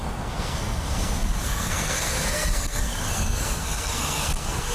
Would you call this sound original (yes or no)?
no